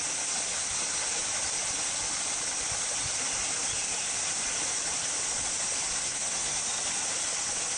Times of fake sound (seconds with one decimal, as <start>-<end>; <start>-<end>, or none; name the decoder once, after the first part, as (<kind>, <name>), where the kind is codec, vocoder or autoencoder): 6.0-6.6 (codec, SNAC)